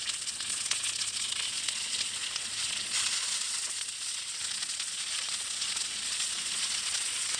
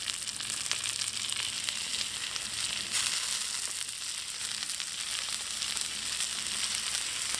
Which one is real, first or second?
second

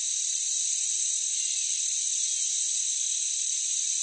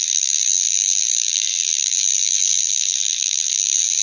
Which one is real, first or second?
first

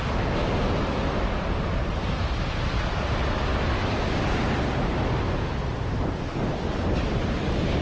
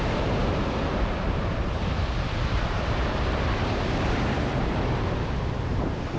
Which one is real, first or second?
first